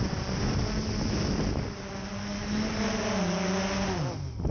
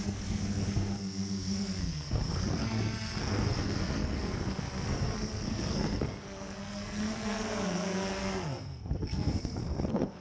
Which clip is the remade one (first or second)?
second